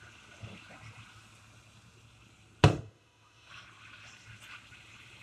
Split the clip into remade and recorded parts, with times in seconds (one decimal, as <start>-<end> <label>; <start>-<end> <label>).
0.0-2.7 recorded; 2.7-3.5 remade; 3.5-5.2 recorded

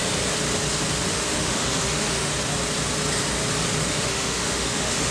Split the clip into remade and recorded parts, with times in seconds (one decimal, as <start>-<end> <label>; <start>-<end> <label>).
0.0-1.1 recorded; 1.1-2.3 remade; 2.3-3.8 recorded; 3.8-5.1 remade

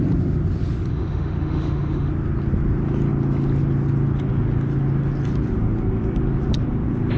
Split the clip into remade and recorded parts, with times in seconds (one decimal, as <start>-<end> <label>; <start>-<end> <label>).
0.0-0.9 recorded; 0.9-2.1 remade; 2.1-7.2 recorded

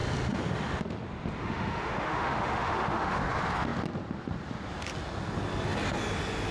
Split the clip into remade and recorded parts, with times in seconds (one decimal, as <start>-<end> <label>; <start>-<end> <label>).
0.0-1.4 recorded; 1.4-3.2 remade; 3.2-6.5 recorded

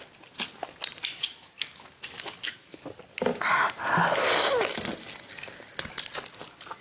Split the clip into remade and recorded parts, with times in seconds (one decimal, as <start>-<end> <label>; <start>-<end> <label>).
0.0-1.0 recorded; 1.0-2.8 remade; 2.8-6.8 recorded

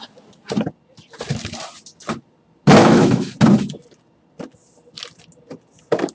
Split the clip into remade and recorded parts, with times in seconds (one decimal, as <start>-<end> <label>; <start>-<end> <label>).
0.0-2.8 recorded; 2.8-3.3 remade; 3.3-6.1 recorded

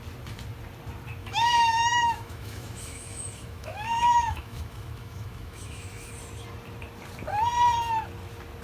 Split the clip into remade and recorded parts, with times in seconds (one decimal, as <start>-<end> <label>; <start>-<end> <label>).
0.0-1.2 recorded; 1.2-6.1 remade; 6.1-8.6 recorded

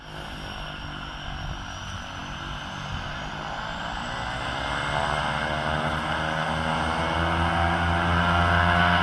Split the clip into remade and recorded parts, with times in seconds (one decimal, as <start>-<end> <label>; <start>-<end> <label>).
0.0-9.0 recorded